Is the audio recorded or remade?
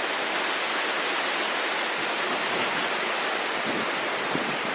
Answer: recorded